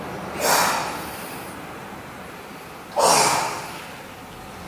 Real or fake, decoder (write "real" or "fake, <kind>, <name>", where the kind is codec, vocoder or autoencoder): real